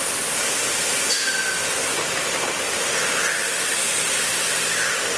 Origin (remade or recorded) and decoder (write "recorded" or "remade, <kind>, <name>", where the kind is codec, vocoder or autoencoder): recorded